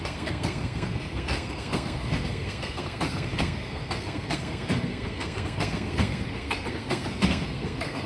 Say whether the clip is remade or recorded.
remade